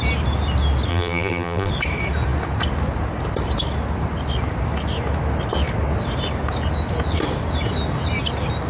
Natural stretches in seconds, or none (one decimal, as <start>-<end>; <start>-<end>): 0.0-0.9; 1.7-8.7